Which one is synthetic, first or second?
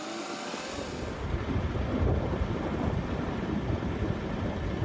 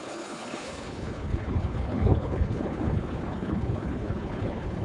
second